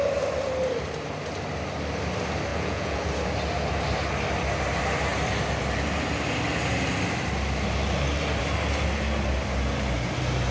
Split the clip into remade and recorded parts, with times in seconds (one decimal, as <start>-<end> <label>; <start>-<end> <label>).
0.0-2.5 recorded; 2.5-3.1 remade; 3.1-10.5 recorded